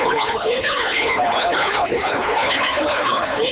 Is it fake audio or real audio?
fake